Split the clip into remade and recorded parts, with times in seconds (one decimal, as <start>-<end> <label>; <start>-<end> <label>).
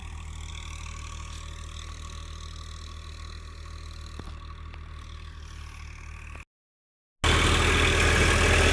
0.0-8.7 recorded